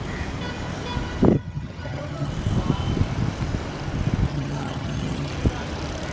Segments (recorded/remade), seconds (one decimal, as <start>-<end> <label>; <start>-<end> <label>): 0.0-1.3 recorded; 1.3-2.3 remade; 2.3-4.3 recorded; 4.3-5.3 remade; 5.3-6.1 recorded